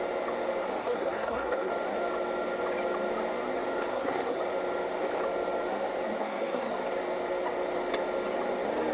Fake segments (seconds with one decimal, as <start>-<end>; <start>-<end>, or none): 0.8-1.7; 3.9-4.4; 6.2-6.7